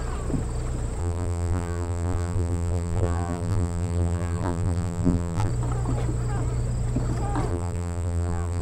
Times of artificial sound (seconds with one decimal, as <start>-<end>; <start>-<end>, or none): 1.0-5.5; 7.5-8.6